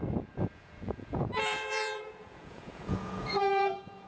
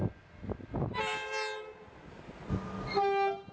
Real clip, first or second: second